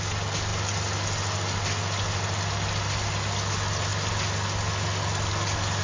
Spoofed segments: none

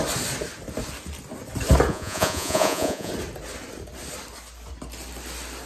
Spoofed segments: 1.9-3.1 (vocoder, Vocos)

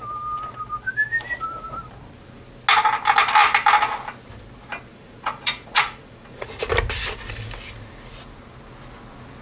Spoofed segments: 4.9-6.6 (vocoder, Vocos)

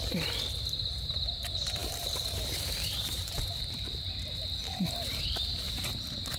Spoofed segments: 1.8-5.2 (vocoder, BigVGAN v2)

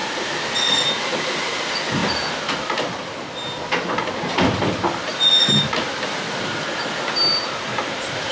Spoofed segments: none

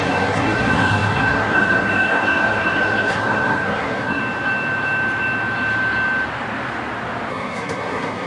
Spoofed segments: 0.0-4.2 (codec, SNAC); 7.3-8.3

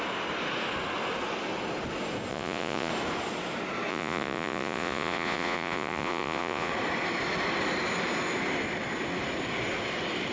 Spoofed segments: 2.3-2.9 (vocoder, Vocos); 3.9-6.7